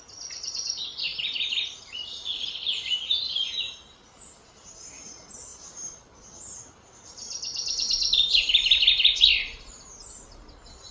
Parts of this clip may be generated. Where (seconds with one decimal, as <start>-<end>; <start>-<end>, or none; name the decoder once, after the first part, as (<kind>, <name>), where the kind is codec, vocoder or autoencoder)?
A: 5.5-6.2 (vocoder, BigVGAN v2)